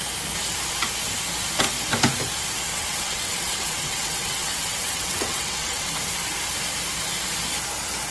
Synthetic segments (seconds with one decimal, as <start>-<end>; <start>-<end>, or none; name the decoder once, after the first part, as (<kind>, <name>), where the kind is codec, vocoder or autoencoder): 2.7-5.9 (vocoder, WaveNeXt)

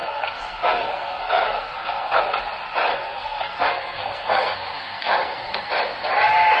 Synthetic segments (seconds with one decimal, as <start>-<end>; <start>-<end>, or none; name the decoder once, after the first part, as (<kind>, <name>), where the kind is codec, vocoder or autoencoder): 0.0-2.2 (codec, SNAC); 2.9-5.7

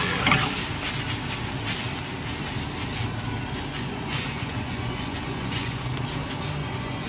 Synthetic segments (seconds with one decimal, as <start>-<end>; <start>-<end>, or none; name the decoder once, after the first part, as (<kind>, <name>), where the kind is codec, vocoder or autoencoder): 3.7-5.9 (vocoder, Vocos); 6.6-7.1

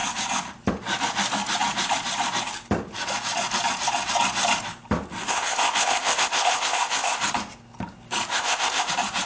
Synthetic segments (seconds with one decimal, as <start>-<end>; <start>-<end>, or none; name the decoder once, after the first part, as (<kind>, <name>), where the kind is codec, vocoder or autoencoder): 5.3-7.2 (codec, ZipCodec); 8.3-8.9

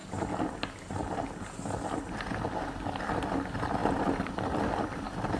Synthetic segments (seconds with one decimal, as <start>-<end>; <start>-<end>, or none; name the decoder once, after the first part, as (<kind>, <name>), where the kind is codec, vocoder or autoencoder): 3.2-5.4 (vocoder, BigVGAN v2)

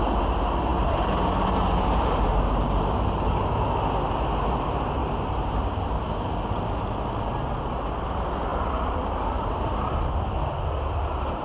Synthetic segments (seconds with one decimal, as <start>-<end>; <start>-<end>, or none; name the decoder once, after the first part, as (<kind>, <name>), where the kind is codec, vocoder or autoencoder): 0.7-3.8 (vocoder, BigVGAN v2); 5.0-5.9; 8.5-9.1

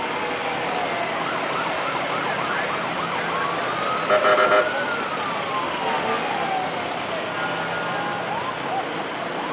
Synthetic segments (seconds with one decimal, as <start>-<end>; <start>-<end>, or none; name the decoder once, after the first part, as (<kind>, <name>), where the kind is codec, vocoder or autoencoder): none